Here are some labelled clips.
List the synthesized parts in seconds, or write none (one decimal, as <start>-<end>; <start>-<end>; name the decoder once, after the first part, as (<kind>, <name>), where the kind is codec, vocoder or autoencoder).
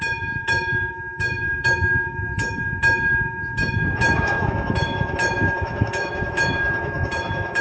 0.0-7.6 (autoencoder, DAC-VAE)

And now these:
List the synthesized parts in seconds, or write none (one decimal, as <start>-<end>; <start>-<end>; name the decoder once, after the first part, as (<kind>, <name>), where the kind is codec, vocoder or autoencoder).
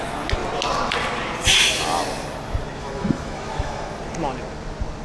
2.8-3.9 (autoencoder, DAC-VAE)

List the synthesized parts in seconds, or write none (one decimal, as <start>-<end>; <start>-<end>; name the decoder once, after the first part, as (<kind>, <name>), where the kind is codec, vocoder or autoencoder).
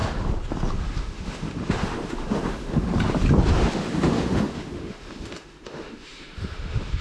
1.0-2.9 (autoencoder, DAC-VAE); 3.5-7.0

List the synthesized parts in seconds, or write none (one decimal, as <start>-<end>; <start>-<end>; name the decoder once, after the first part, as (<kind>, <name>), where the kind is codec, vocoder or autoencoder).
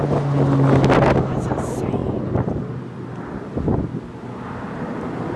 none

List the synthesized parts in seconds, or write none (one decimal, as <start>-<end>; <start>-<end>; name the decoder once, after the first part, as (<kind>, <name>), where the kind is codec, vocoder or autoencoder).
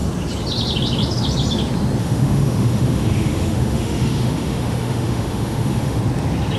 2.0-6.0 (autoencoder, DAC-VAE)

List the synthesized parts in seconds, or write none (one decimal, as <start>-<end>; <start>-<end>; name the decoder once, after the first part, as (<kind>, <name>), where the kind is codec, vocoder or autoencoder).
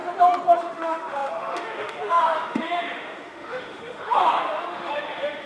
0.6-5.5 (autoencoder, DAC-VAE)